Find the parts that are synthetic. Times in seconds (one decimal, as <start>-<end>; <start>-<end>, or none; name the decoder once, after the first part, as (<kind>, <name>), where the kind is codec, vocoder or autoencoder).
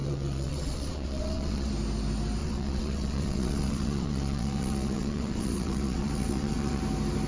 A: 0.0-1.7 (vocoder, WaveNeXt); 2.4-6.8